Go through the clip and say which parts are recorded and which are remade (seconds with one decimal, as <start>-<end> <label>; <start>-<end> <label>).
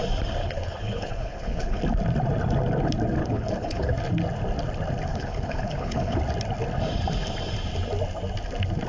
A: 0.0-0.4 recorded; 0.4-1.8 remade; 1.8-3.2 recorded; 3.2-3.9 remade; 3.9-5.1 recorded; 5.1-6.2 remade; 6.2-8.9 recorded